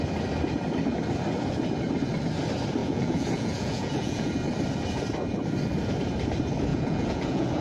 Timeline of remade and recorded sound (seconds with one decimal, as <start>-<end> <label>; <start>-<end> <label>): 0.0-2.8 recorded; 2.8-4.3 remade; 4.3-6.7 recorded; 6.7-7.6 remade